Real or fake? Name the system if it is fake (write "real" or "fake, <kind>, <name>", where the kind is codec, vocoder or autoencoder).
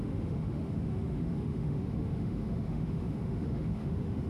fake, autoencoder, DAC-VAE